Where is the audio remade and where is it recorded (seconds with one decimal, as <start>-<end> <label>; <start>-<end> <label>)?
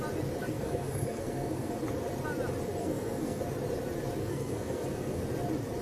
0.0-0.4 recorded; 0.4-1.8 remade; 1.8-2.8 recorded; 2.8-3.4 remade; 3.4-4.2 recorded; 4.2-5.2 remade; 5.2-5.8 recorded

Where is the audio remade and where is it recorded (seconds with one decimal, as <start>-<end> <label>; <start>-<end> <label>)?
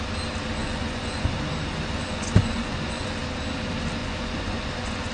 0.0-0.6 recorded; 0.6-3.2 remade; 3.2-4.0 recorded; 4.0-5.1 remade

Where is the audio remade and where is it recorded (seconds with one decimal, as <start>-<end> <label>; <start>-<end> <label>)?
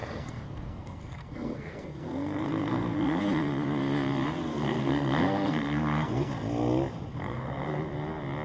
0.0-3.2 remade; 3.2-4.5 recorded; 4.5-6.3 remade; 6.3-7.1 recorded; 7.1-7.8 remade; 7.8-8.4 recorded